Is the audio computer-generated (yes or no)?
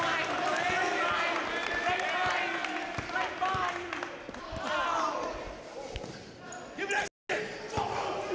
no